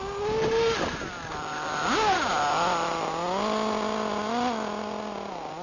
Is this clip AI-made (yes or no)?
no